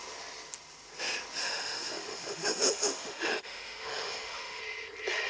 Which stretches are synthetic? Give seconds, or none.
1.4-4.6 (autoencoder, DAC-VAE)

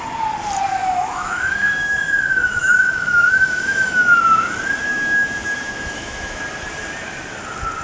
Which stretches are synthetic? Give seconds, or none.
0.8-4.2 (autoencoder, DAC-VAE); 4.8-6.4

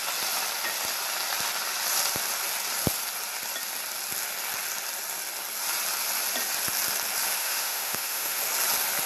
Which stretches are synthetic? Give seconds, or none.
7.4-8.4 (autoencoder, DAC-VAE)

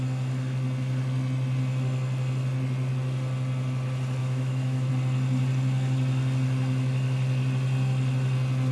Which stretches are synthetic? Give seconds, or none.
4.2-4.9 (autoencoder, DAC-VAE)